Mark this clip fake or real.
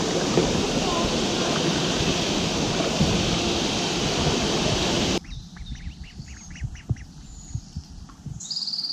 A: real